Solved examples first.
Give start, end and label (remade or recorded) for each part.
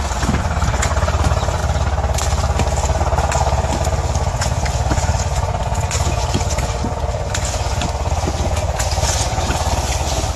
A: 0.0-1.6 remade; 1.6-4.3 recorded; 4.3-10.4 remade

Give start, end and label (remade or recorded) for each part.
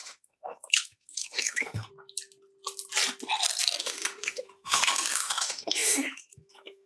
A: 0.0-1.9 remade; 1.9-3.8 recorded; 3.8-6.9 remade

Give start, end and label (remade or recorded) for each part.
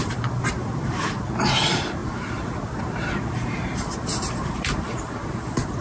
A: 0.0-5.8 remade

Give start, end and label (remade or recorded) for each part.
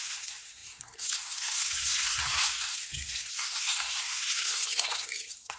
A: 0.0-5.6 remade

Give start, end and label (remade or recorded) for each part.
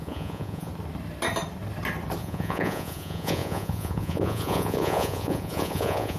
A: 0.0-0.7 remade; 0.7-2.2 recorded; 2.2-6.2 remade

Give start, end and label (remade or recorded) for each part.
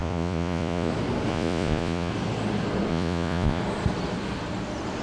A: 0.0-0.9 remade; 0.9-1.3 recorded; 1.3-2.1 remade; 2.1-2.9 recorded; 2.9-3.6 remade; 3.6-5.0 recorded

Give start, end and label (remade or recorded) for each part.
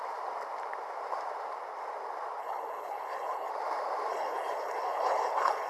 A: 0.0-2.4 recorded; 2.4-3.5 remade; 3.5-4.1 recorded; 4.1-5.7 remade